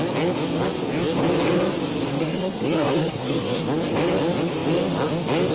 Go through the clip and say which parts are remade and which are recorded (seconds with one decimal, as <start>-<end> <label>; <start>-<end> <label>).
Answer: 0.0-2.1 recorded; 2.1-3.6 remade; 3.6-5.5 recorded